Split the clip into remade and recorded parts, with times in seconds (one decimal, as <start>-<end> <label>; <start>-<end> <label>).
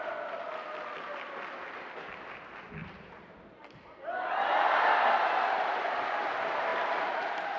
0.0-2.8 recorded; 2.8-6.1 remade; 6.1-7.6 recorded